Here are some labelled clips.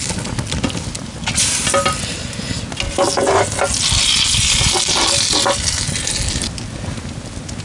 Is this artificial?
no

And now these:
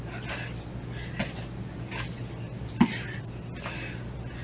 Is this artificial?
no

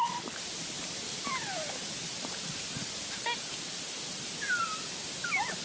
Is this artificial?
no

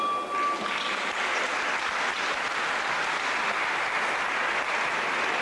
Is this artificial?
no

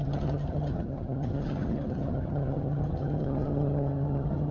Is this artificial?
yes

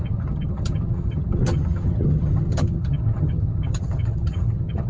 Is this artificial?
yes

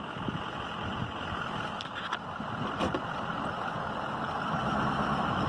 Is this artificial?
no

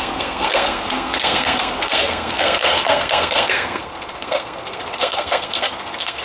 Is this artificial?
yes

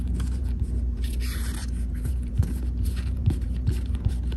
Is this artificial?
yes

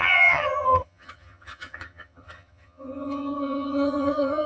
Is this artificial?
yes